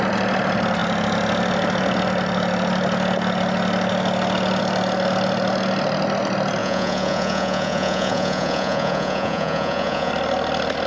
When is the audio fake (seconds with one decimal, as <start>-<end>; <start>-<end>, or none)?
6.6-10.1